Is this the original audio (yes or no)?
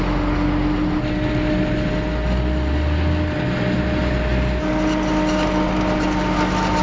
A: yes